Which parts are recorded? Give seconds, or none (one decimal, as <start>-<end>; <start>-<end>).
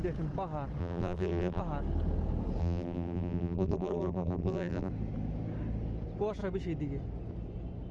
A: 0.0-0.8; 1.6-2.6; 4.9-7.9